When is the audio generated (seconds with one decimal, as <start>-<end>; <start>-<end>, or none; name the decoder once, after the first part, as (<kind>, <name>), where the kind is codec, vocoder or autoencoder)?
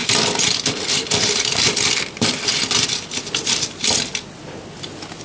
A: 0.0-2.5 (vocoder, BigVGAN v2)